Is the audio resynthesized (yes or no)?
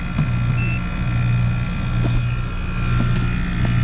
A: no